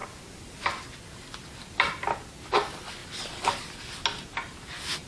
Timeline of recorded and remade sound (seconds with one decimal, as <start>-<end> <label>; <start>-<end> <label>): 0.0-5.1 recorded